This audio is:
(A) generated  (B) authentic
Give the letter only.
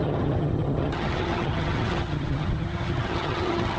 A